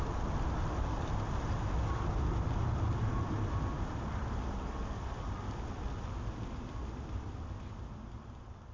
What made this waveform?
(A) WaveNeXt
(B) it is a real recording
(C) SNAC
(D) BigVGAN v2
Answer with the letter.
B